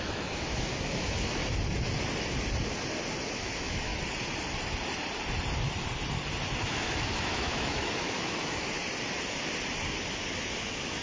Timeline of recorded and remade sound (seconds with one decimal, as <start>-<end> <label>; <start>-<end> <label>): 0.0-1.4 remade; 1.4-3.3 recorded; 3.3-3.9 remade; 3.9-6.6 recorded; 6.6-8.8 remade; 8.8-10.6 recorded; 10.6-11.0 remade

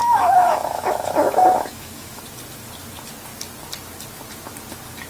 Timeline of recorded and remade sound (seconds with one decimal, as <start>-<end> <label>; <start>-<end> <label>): 0.0-2.2 remade; 2.2-5.1 recorded

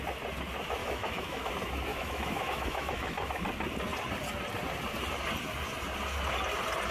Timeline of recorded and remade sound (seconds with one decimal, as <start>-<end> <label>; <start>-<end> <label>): 0.0-0.8 recorded; 0.8-1.5 remade; 1.5-1.9 recorded; 1.9-3.3 remade; 3.3-6.9 recorded

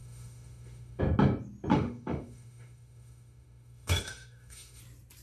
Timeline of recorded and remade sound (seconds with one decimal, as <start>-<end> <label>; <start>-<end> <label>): 0.0-1.0 remade; 1.0-1.7 recorded; 1.7-4.8 remade; 4.8-5.2 recorded